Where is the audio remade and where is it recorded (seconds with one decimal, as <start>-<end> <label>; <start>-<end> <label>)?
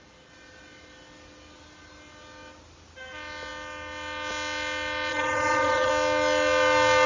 0.0-5.1 recorded; 5.1-5.9 remade; 5.9-7.1 recorded